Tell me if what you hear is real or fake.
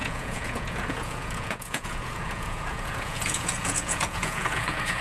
fake